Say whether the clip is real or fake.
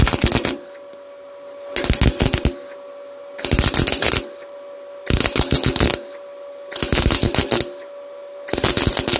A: real